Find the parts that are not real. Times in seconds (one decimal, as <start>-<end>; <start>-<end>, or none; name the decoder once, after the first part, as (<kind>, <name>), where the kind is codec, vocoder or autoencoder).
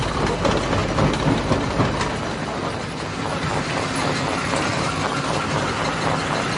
none